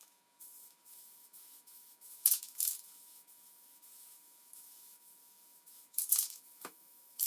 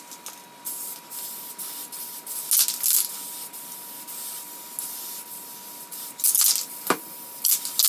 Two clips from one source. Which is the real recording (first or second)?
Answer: second